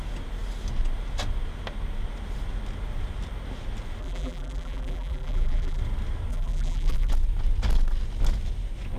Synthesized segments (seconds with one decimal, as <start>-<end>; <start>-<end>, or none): 4.0-5.8; 6.3-7.1